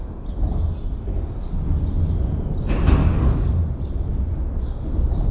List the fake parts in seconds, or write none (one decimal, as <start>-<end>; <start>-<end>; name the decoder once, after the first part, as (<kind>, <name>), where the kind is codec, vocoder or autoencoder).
3.0-3.5 (codec, DAC)